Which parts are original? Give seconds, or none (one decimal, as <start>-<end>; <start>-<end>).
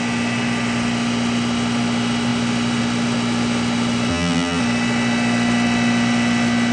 0.0-4.1; 4.6-6.7